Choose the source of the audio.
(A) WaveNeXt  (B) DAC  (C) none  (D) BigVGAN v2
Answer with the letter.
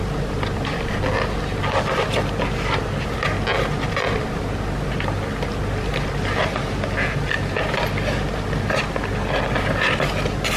C